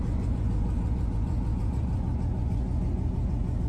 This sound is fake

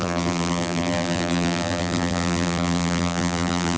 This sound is fake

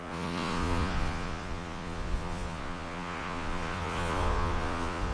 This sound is fake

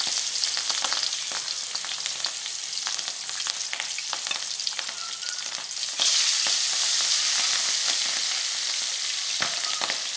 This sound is real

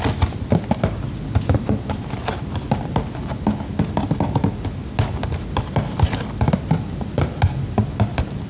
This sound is real